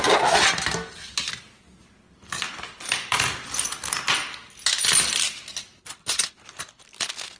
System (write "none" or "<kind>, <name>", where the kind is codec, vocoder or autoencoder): none